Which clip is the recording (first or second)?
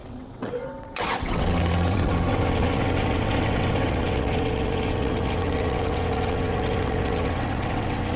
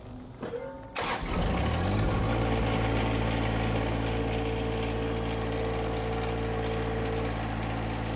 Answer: second